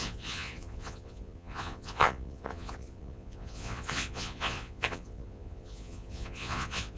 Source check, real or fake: fake